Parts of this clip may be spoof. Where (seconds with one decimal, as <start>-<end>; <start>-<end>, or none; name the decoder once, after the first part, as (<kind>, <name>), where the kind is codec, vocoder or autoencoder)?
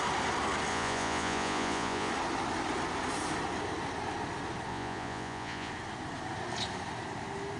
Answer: 0.7-2.1 (vocoder, Vocos); 4.7-5.7